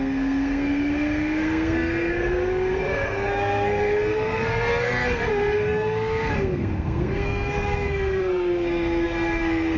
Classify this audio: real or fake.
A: fake